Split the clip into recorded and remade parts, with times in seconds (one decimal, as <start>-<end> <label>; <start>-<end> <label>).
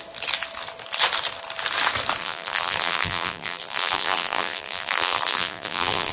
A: 0.0-2.2 recorded; 2.2-6.1 remade